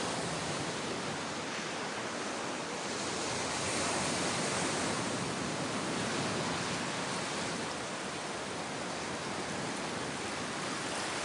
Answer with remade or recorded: recorded